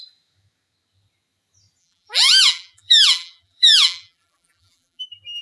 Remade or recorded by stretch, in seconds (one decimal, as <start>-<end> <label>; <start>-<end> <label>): 0.0-1.8 recorded; 1.8-5.0 remade; 5.0-5.4 recorded